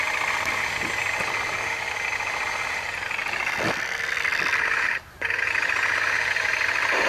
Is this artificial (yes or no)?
no